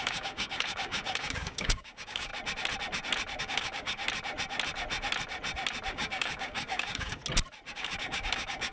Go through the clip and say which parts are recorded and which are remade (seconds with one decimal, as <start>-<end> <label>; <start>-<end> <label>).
0.0-2.3 remade; 2.3-3.4 recorded; 3.4-4.0 remade; 4.0-5.9 recorded; 5.9-7.2 remade; 7.2-7.7 recorded; 7.7-8.7 remade